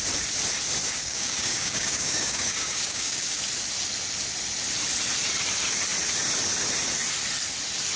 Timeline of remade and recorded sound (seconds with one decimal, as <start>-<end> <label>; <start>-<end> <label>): 0.0-0.8 recorded; 0.8-3.4 remade; 3.4-8.0 recorded